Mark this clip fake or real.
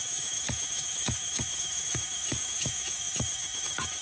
fake